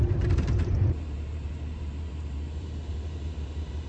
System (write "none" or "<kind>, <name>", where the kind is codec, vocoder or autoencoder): vocoder, BigVGAN v2